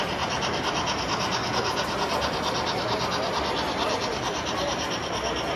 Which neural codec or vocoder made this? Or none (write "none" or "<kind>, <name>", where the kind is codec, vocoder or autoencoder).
none